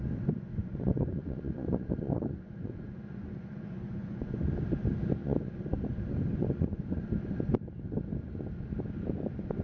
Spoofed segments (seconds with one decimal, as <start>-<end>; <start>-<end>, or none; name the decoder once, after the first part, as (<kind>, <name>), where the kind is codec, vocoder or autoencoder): 0.6-4.5 (vocoder, Vocos); 5.2-5.8; 6.3-7.0